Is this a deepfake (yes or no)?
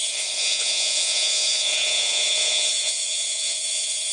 yes